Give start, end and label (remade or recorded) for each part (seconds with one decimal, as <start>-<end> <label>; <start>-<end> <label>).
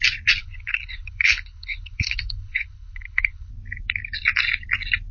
0.0-0.4 recorded; 0.4-3.5 remade; 3.5-5.1 recorded